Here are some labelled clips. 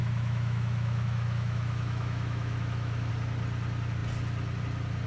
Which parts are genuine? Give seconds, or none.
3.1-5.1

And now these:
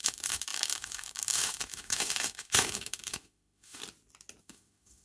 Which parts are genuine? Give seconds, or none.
3.8-4.4

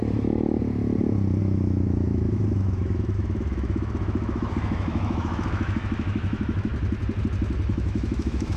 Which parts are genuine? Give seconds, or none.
0.0-1.4; 6.7-7.7

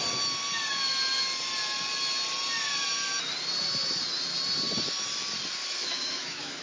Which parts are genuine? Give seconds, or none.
0.0-5.6